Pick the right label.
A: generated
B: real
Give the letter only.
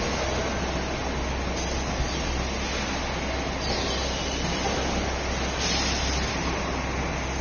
B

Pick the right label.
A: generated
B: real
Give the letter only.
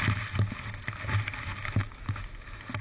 B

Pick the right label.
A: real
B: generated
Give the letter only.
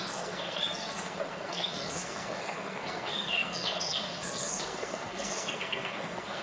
B